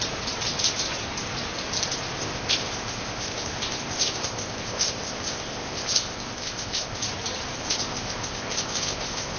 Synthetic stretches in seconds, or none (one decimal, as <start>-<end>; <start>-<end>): 2.2-7.0; 7.6-9.4